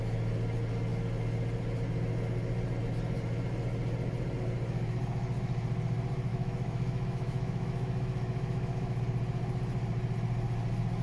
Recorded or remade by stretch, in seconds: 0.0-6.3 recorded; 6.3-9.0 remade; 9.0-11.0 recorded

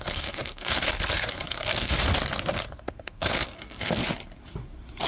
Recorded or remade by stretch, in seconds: 0.0-2.1 remade; 2.1-2.7 recorded; 2.7-4.0 remade; 4.0-5.1 recorded